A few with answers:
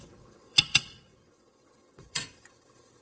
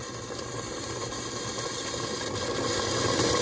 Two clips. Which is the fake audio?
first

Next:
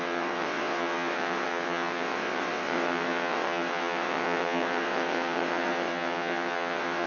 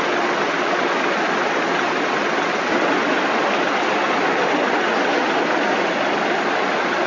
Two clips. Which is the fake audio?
first